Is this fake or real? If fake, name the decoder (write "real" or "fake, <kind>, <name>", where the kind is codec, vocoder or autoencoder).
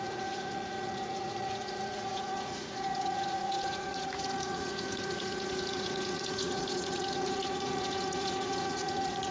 fake, vocoder, Vocos